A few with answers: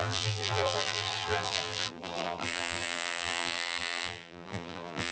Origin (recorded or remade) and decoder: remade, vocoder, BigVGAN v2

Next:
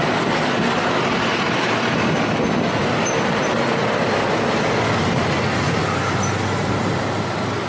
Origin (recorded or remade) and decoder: recorded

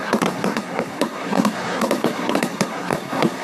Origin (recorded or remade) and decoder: remade, codec, SNAC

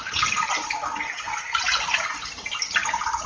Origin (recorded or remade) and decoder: recorded